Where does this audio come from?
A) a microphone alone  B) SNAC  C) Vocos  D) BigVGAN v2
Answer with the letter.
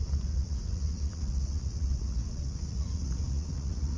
C